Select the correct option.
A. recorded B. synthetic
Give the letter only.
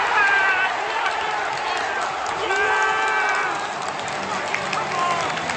A